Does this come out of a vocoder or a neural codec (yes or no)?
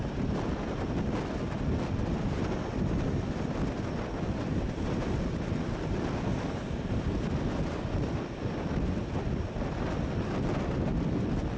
no